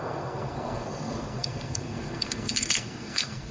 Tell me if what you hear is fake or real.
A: fake